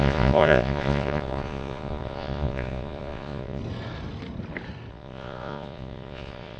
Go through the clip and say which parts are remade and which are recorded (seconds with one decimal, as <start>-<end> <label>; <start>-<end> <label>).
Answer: 0.0-3.6 remade; 3.6-4.9 recorded; 4.9-6.6 remade

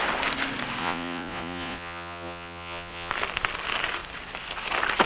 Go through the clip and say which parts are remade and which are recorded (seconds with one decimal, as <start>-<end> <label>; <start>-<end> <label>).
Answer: 0.0-0.8 recorded; 0.8-3.1 remade; 3.1-5.1 recorded

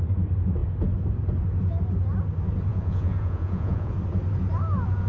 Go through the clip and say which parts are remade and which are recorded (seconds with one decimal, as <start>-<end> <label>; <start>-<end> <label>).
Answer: 0.0-2.7 recorded; 2.7-3.9 remade; 3.9-5.1 recorded

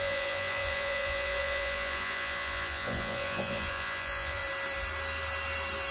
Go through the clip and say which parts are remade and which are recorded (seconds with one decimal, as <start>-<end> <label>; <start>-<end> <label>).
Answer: 0.0-4.4 remade; 4.4-5.9 recorded